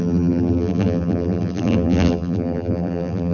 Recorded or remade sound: remade